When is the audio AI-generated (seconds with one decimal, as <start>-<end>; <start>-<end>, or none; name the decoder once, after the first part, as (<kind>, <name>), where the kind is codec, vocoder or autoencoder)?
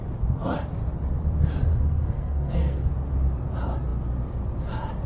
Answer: 1.7-2.9 (codec, SNAC)